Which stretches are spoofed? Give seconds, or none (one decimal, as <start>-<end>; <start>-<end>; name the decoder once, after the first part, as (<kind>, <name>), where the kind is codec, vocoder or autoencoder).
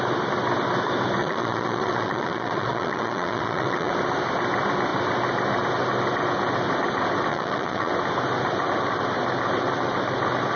1.2-3.9 (vocoder, Vocos); 7.3-7.9